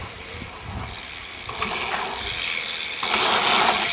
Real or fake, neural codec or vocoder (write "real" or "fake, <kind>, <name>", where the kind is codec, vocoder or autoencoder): real